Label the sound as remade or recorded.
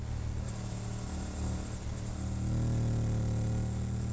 recorded